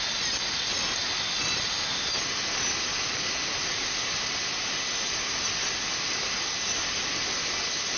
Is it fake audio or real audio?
real